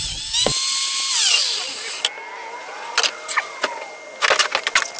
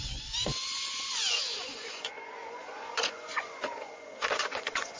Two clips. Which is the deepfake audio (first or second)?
second